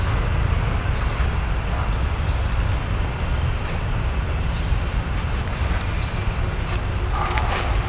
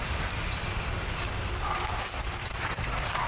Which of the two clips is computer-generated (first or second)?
second